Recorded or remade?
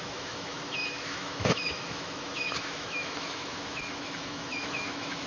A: remade